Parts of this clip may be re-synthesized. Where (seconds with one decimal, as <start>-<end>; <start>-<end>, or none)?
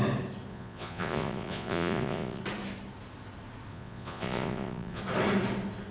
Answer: 0.5-2.4; 3.7-5.0